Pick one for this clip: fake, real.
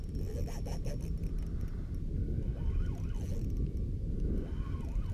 real